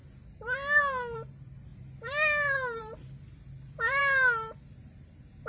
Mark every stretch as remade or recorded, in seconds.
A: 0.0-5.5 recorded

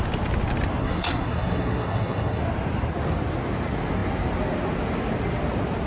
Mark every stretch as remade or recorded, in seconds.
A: 0.0-0.8 recorded; 0.8-2.4 remade; 2.4-5.9 recorded

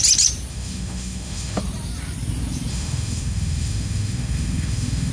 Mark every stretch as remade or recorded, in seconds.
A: 0.0-0.5 recorded; 0.5-1.6 remade; 1.6-2.7 recorded; 2.7-5.1 remade

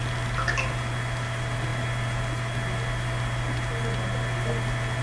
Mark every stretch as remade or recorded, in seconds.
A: 0.0-5.0 recorded

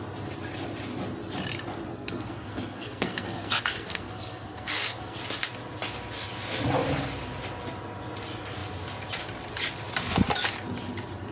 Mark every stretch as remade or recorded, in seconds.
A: 0.0-1.9 recorded; 1.9-5.2 remade; 5.2-11.3 recorded